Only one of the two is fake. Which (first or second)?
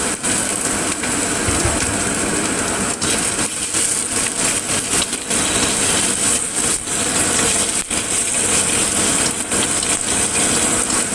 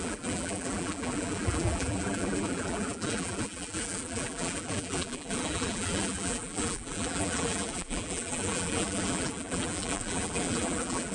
second